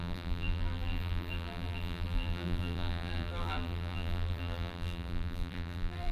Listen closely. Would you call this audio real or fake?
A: fake